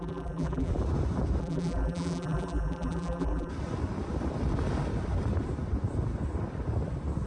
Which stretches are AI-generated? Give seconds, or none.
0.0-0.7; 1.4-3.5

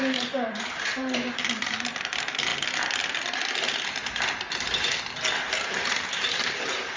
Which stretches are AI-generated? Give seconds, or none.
0.0-2.5; 5.9-7.0

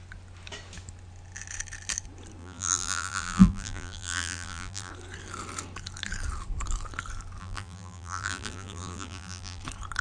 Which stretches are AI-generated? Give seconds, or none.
2.4-4.9; 7.4-9.6

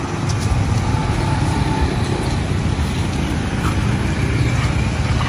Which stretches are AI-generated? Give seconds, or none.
1.0-4.2

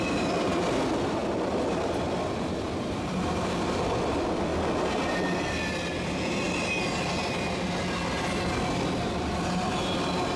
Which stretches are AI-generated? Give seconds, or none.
0.0-4.5; 9.3-10.4